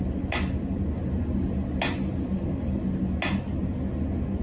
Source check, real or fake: real